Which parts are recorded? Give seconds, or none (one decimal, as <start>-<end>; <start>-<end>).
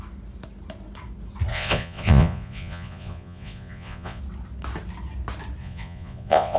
0.0-1.5; 4.2-5.6